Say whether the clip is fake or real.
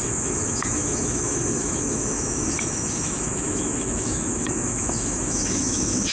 fake